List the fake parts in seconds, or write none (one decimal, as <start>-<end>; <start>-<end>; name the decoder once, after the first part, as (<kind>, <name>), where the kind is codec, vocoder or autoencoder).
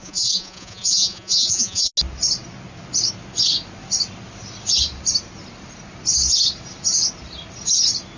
0.0-1.9 (vocoder, Vocos)